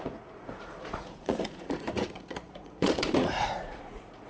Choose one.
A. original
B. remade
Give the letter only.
B